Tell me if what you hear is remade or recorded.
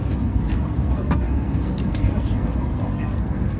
remade